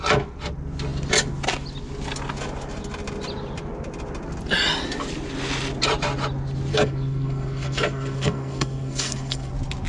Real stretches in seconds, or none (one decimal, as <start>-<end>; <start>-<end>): 0.0-6.7; 9.5-9.9